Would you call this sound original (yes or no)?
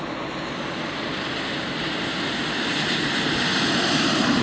no